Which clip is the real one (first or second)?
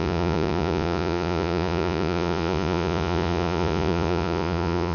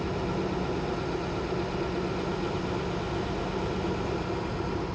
second